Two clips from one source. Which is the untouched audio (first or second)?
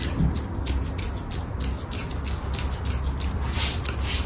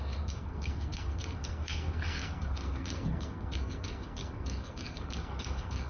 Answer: first